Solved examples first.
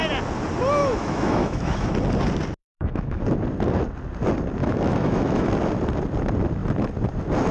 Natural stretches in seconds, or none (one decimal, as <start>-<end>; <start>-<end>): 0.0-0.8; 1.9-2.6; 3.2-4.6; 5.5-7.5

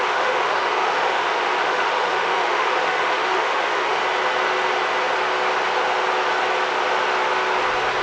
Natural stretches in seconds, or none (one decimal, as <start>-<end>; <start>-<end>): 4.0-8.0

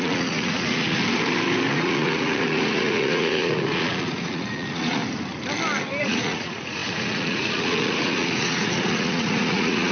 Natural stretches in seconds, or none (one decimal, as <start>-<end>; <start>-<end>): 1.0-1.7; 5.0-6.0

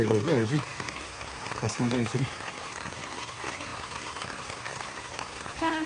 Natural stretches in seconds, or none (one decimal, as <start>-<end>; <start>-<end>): none

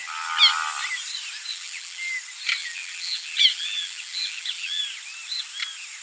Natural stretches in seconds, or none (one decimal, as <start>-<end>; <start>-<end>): 0.0-1.5; 2.1-2.6; 4.8-6.0